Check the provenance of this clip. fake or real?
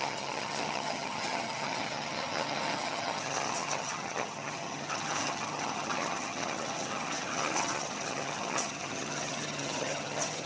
fake